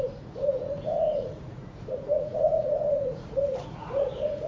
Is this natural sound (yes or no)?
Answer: no